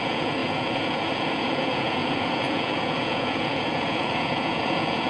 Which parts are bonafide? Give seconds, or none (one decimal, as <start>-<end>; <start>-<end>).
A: none